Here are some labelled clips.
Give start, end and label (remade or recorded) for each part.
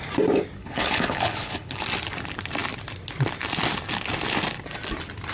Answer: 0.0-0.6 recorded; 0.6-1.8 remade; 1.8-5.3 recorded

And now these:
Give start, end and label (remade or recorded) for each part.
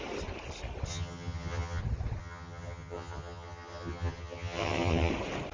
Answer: 0.0-0.9 recorded; 0.9-1.8 remade; 1.8-2.2 recorded; 2.2-5.1 remade; 5.1-5.5 recorded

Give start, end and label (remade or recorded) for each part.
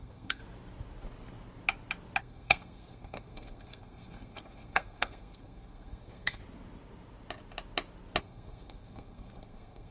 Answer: 0.0-0.4 remade; 0.4-2.2 recorded; 2.2-6.4 remade; 6.4-8.2 recorded; 8.2-9.9 remade